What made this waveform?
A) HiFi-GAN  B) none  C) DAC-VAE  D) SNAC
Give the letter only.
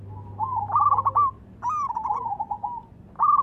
B